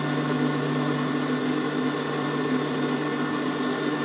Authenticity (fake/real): real